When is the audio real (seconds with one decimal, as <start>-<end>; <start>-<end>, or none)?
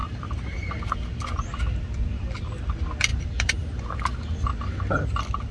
1.1-3.1; 4.5-5.5